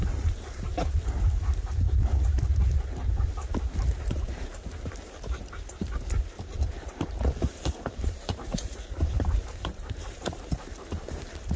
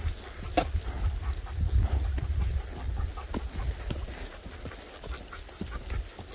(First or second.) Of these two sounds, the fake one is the first